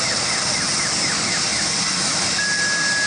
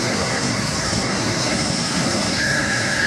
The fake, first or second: second